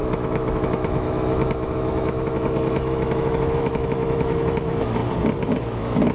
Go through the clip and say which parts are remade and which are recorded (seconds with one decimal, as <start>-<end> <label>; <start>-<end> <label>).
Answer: 0.0-5.0 remade; 5.0-5.6 recorded; 5.6-6.1 remade